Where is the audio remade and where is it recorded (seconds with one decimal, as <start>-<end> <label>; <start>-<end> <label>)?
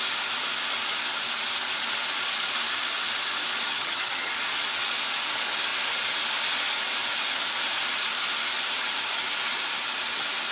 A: 0.0-3.7 recorded; 3.7-4.3 remade; 4.3-10.5 recorded